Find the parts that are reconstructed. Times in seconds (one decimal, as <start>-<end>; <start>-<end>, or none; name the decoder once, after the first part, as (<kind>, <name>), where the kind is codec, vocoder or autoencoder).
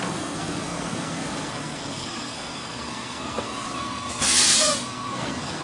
0.0-5.6 (codec, SNAC)